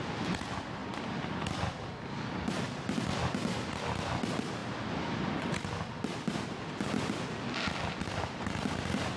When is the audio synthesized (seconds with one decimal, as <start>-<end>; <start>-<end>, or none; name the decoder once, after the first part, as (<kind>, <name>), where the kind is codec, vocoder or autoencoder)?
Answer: none